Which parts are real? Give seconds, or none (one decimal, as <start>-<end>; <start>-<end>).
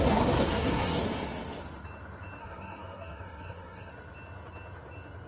1.0-2.4; 3.9-5.3